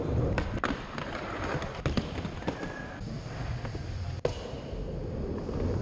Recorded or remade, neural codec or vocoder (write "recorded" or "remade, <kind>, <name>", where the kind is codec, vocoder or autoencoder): recorded